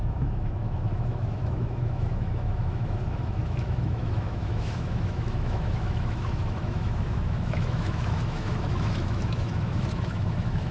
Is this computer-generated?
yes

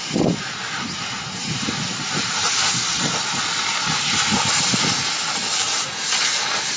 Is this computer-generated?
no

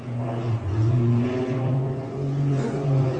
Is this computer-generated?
yes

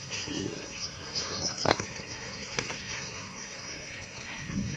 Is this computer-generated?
yes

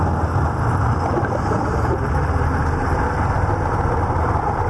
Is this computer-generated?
no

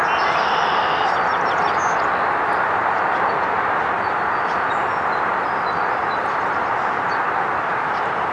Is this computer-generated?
no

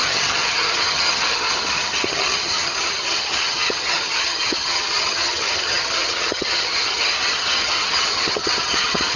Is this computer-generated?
yes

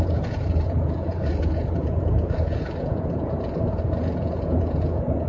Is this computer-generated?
yes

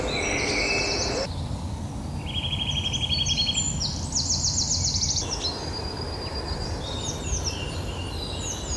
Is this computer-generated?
no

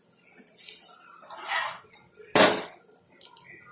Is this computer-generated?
no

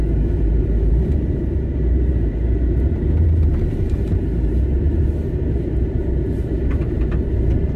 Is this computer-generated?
yes